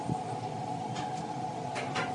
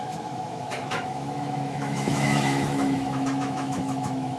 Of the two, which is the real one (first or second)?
first